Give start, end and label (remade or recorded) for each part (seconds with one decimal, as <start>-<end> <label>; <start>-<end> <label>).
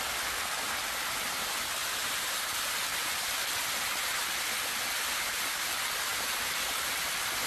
0.0-1.8 recorded; 1.8-3.3 remade; 3.3-7.5 recorded